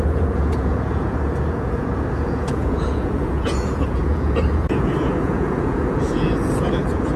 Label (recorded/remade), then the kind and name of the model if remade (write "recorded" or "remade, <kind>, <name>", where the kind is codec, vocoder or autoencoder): remade, vocoder, Vocos